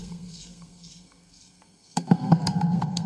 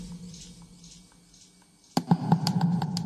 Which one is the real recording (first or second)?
second